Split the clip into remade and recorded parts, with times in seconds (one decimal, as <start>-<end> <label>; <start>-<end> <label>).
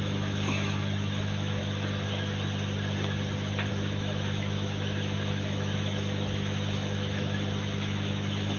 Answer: 0.0-1.6 remade; 1.6-3.7 recorded; 3.7-8.6 remade